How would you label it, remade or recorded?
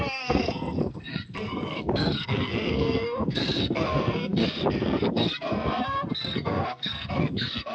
remade